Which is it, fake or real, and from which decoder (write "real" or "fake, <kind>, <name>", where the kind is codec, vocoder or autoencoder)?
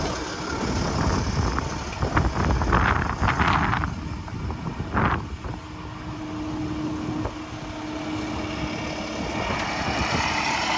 real